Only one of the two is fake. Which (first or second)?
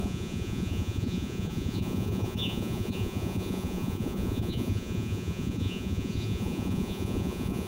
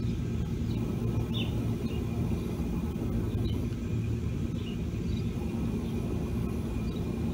first